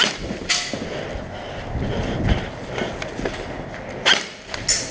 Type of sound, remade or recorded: recorded